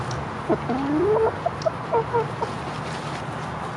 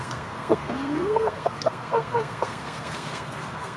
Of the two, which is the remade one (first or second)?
second